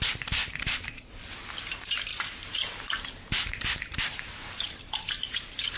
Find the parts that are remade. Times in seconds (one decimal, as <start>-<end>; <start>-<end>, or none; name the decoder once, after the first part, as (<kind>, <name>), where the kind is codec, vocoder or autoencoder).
0.4-1.3 (vocoder, BigVGAN v2); 2.1-5.8